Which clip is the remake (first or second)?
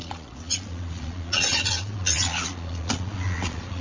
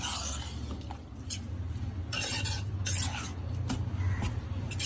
first